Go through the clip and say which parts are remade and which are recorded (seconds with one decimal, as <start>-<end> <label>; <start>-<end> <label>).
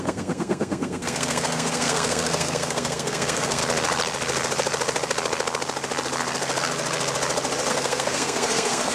0.0-3.6 remade; 3.6-7.7 recorded; 7.7-8.9 remade